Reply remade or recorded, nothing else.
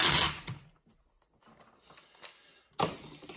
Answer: recorded